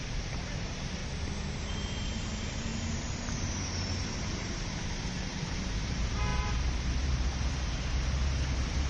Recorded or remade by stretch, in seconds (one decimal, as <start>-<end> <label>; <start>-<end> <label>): 0.0-1.0 remade; 1.0-1.6 recorded; 1.6-2.7 remade; 2.7-3.3 recorded; 3.3-8.9 remade